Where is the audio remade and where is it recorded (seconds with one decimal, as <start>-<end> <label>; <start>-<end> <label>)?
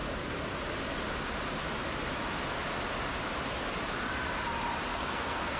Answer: 0.0-4.9 recorded; 4.9-5.6 remade